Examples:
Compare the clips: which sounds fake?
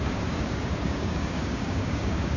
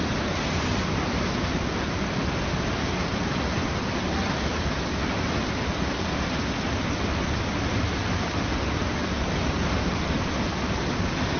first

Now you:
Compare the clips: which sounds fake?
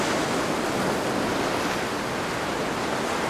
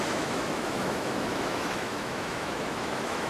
second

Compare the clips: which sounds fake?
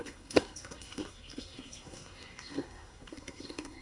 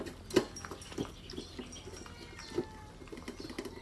first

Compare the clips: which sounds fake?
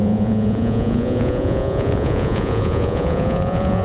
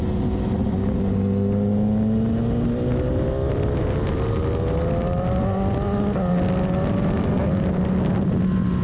first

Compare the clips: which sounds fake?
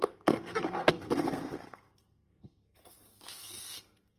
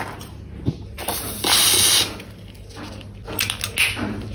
first